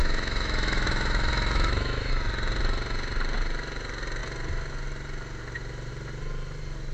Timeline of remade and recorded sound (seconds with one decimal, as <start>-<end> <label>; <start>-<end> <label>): 0.0-2.1 remade; 2.1-6.9 recorded